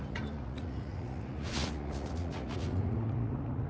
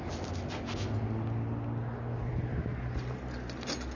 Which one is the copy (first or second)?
first